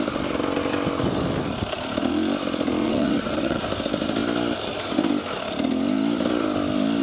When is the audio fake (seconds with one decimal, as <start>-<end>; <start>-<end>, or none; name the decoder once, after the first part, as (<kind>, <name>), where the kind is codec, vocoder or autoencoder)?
2.8-3.6 (vocoder, WaveNeXt)